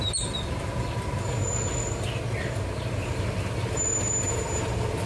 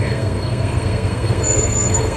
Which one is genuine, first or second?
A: first